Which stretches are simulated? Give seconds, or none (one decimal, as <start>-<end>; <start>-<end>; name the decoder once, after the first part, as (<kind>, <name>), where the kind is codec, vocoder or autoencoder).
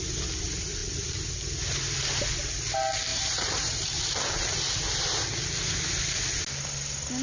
3.1-4.0 (vocoder, BigVGAN v2)